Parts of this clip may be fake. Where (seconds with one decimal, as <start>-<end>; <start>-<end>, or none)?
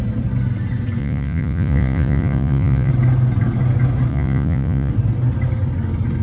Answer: 1.0-2.9; 4.1-4.9